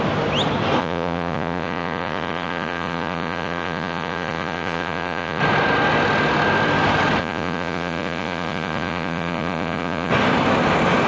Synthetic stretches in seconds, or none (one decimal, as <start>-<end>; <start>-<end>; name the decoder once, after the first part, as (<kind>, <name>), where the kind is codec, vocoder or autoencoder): 0.8-5.4 (vocoder, Vocos); 7.2-10.1

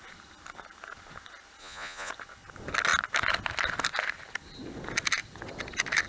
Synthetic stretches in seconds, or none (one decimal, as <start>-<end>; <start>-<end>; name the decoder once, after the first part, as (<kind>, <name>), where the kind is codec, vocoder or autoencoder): 1.6-2.1 (vocoder, Vocos)

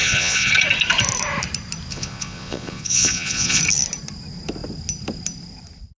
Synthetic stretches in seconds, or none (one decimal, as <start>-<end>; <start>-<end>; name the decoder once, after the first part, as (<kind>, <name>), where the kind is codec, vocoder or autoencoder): 0.0-0.5 (vocoder, Vocos); 1.9-3.6